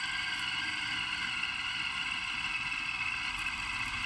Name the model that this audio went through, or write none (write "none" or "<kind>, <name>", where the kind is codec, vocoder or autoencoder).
none